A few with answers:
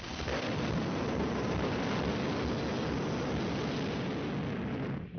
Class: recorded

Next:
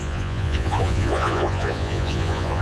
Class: remade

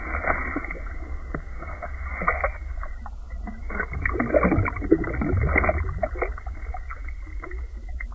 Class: recorded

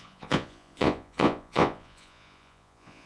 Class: remade